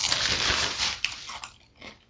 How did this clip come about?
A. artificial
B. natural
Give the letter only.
B